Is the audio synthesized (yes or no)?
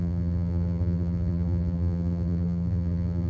yes